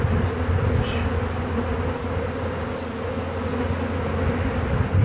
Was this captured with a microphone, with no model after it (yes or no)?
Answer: yes